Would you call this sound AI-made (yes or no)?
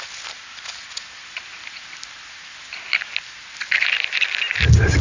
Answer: no